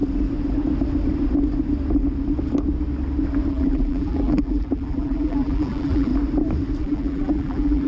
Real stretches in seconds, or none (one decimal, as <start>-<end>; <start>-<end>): 0.0-3.5; 6.1-6.8

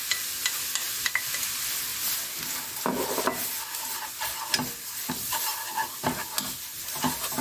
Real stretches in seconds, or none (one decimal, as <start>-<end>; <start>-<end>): 0.0-0.7; 1.9-5.1; 5.5-7.4

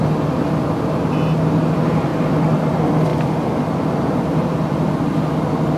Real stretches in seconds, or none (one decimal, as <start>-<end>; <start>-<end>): 0.0-5.8

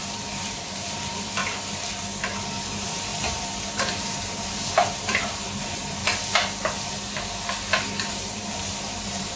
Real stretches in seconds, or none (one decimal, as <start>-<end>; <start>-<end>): 1.4-2.6; 6.0-8.1

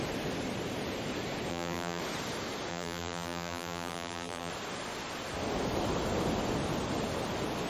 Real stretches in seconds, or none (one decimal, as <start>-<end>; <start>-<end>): 0.0-1.5; 2.0-2.7; 4.5-7.7

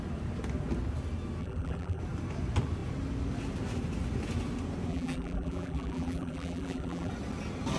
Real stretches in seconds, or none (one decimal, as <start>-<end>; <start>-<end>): 0.0-1.4; 2.0-4.9; 7.1-7.8

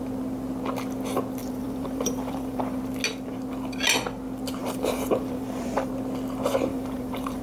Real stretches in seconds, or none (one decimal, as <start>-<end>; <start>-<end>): 0.0-1.4; 2.8-4.6; 5.9-6.7